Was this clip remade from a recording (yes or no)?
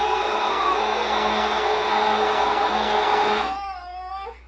yes